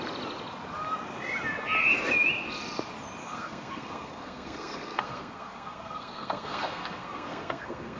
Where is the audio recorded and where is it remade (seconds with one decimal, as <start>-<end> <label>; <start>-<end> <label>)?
0.0-3.2 recorded; 3.2-8.0 remade

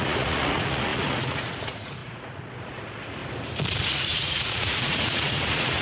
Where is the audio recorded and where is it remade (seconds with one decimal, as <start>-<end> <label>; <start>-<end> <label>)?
0.0-3.2 remade; 3.2-3.9 recorded; 3.9-5.8 remade

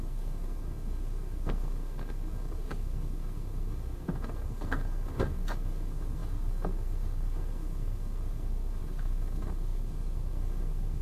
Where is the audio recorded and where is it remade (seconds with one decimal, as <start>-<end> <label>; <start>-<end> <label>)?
0.0-11.0 remade

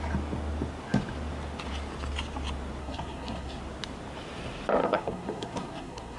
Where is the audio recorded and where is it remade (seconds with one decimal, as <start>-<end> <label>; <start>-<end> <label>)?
0.0-2.8 recorded; 2.8-3.6 remade; 3.6-4.8 recorded; 4.8-6.2 remade

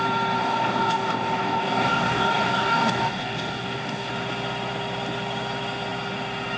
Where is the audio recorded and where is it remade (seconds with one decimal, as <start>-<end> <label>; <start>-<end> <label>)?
0.0-0.4 recorded; 0.4-4.1 remade; 4.1-6.6 recorded